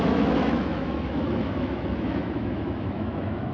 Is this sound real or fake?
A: fake